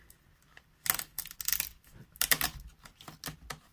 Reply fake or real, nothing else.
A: real